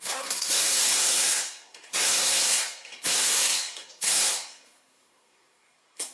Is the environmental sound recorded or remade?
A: remade